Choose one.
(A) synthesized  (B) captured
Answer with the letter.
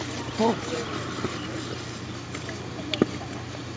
B